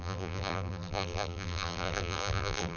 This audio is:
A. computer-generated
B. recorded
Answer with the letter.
A